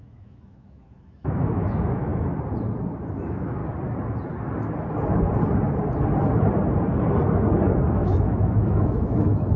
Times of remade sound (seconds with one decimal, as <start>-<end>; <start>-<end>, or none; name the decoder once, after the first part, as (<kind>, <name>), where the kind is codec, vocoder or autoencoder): 0.0-2.1 (autoencoder, DAC-VAE); 3.2-3.6; 7.9-9.6